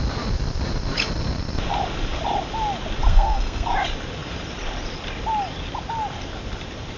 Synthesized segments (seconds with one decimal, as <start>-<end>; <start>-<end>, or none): 3.1-3.7